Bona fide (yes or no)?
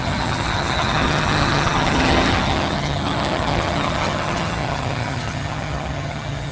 no